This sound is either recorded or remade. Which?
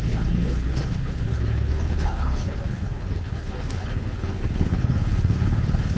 remade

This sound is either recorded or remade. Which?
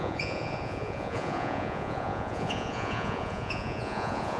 remade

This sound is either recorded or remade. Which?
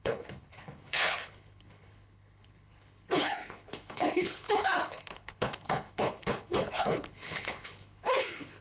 remade